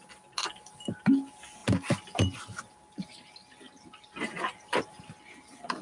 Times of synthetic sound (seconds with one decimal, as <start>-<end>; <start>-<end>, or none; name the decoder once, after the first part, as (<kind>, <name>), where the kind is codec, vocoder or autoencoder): none